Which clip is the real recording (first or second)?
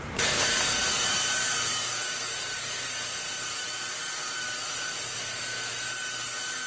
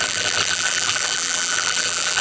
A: first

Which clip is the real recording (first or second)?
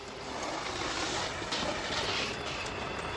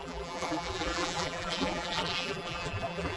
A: first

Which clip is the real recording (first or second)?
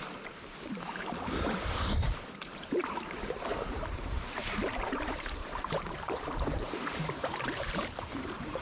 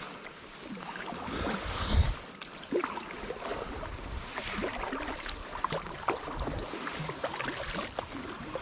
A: second